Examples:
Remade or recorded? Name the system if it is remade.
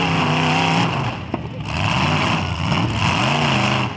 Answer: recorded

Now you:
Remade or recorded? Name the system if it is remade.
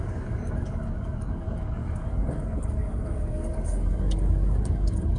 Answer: remade, codec, DAC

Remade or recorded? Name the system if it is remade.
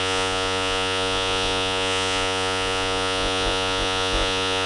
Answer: remade, vocoder, Vocos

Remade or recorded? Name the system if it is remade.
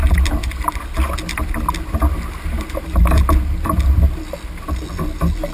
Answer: recorded